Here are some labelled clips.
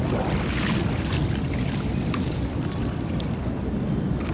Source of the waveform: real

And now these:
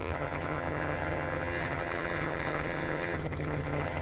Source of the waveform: fake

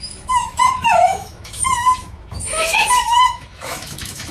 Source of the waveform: fake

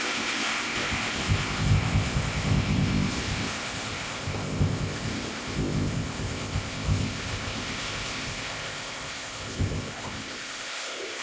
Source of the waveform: fake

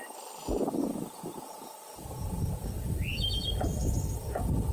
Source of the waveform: fake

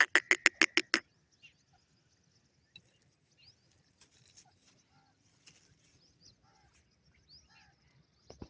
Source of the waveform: real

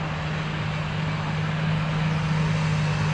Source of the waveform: real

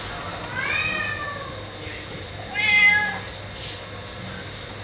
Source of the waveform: real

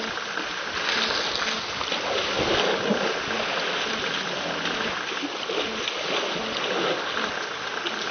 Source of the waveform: real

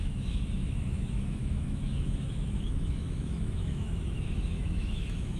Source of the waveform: fake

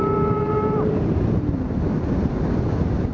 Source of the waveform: fake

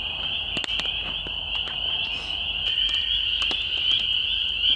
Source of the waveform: real